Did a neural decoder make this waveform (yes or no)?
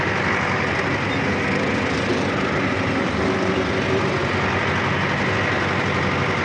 no